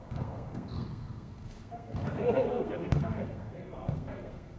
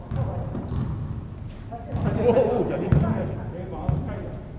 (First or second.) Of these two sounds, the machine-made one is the first